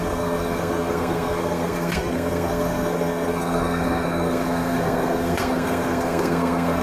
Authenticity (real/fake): fake